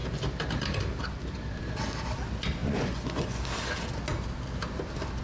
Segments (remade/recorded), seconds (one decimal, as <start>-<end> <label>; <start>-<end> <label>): 0.0-2.6 recorded; 2.6-3.4 remade; 3.4-5.2 recorded